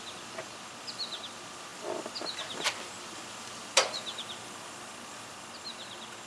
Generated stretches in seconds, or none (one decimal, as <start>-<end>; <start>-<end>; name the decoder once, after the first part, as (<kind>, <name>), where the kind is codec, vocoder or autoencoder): none